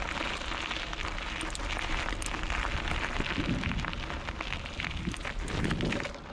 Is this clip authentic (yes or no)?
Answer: yes